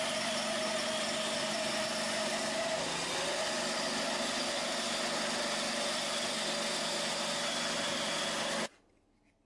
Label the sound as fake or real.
real